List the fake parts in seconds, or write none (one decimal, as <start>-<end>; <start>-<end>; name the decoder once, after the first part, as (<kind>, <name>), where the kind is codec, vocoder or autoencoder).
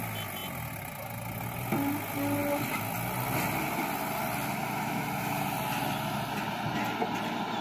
none